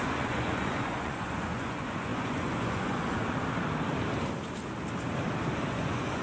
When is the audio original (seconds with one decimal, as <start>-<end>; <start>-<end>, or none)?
3.2-5.7